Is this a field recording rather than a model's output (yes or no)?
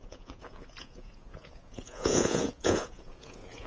no